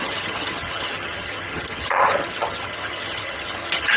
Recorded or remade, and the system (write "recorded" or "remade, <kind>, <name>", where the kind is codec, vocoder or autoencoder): remade, vocoder, HiFi-GAN